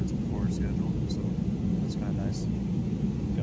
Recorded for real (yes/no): yes